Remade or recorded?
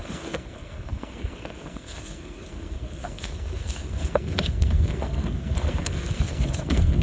remade